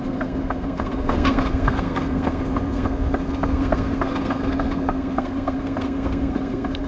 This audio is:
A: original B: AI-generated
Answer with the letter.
B